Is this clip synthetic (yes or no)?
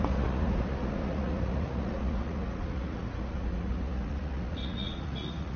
yes